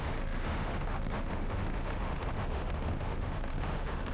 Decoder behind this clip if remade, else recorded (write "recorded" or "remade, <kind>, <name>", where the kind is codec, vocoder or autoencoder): remade, autoencoder, DAC-VAE